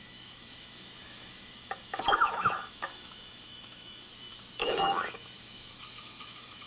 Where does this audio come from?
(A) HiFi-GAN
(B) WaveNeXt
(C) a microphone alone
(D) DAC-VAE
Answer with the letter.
D